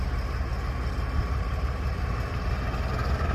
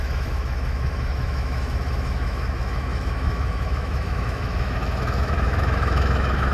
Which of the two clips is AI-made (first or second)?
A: second